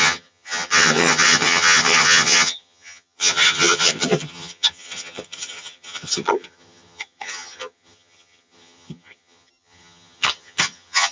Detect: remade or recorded remade